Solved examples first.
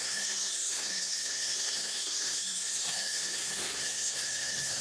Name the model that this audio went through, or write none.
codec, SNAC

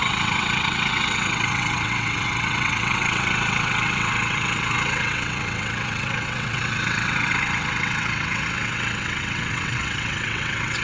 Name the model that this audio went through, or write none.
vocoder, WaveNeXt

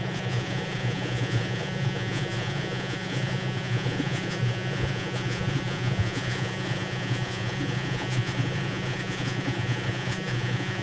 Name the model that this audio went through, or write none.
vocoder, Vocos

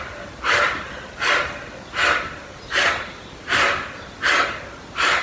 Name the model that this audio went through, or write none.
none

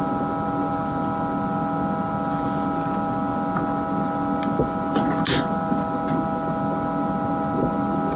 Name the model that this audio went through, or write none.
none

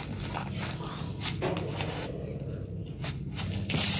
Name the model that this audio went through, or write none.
none